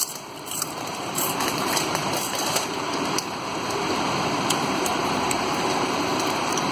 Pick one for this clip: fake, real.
fake